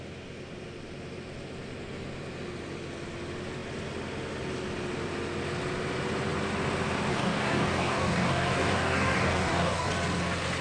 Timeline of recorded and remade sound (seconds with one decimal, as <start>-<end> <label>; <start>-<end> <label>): 0.0-7.1 recorded; 7.1-9.9 remade; 9.9-10.6 recorded